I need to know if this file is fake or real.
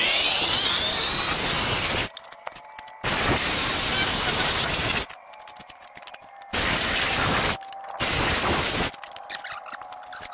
real